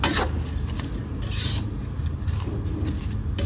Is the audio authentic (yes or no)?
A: yes